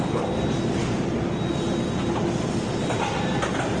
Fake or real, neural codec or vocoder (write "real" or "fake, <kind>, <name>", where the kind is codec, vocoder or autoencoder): real